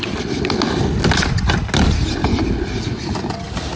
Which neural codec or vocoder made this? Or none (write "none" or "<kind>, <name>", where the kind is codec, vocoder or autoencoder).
none